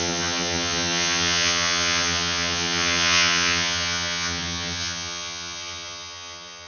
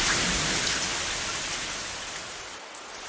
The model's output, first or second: first